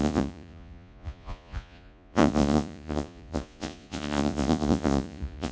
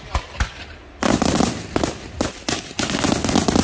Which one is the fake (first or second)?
first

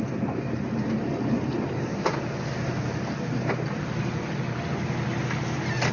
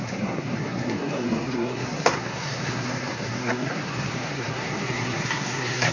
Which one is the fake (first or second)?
second